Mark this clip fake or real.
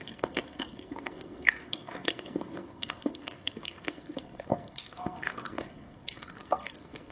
fake